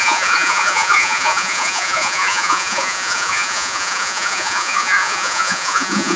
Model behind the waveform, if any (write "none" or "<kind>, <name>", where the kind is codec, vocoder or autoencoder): vocoder, Vocos